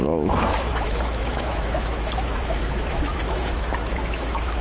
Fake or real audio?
fake